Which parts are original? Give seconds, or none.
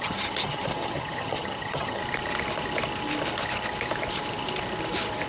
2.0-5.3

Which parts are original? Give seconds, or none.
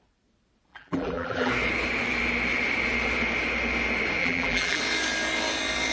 0.0-0.7; 1.5-4.2; 4.8-5.9